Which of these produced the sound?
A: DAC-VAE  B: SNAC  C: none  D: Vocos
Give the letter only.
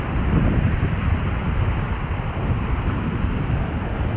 C